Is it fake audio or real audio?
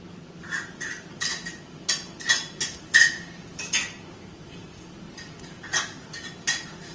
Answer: real